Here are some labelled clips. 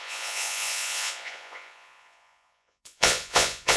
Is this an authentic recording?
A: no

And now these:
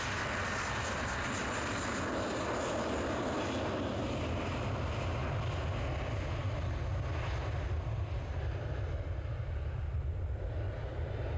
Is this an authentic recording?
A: yes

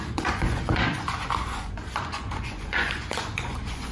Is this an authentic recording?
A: no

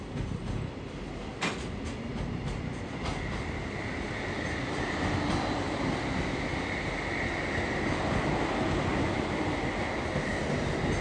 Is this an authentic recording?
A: yes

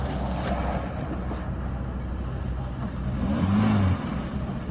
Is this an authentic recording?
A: yes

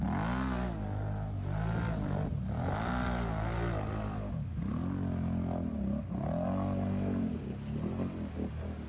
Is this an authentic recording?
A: yes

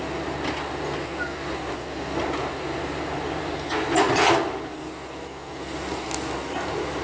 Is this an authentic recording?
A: yes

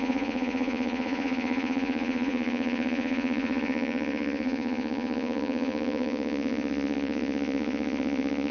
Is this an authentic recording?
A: no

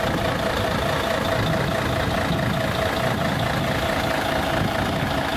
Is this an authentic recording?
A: yes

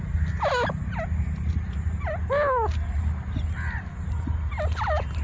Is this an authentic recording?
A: yes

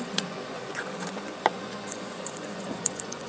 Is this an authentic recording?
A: no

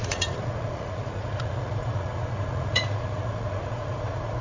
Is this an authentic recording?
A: no